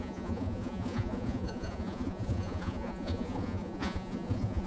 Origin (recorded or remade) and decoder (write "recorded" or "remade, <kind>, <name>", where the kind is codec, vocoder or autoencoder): remade, vocoder, Vocos